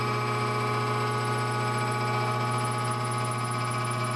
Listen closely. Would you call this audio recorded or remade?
recorded